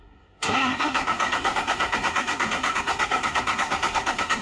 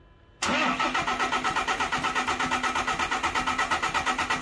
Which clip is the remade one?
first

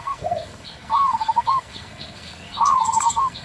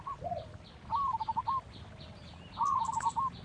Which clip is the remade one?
first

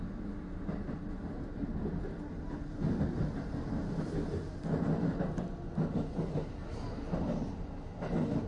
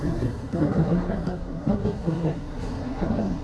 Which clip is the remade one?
second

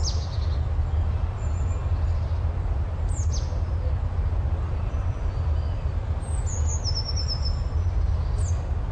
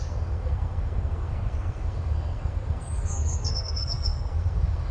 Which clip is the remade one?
second